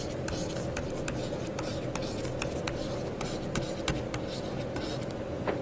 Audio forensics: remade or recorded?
recorded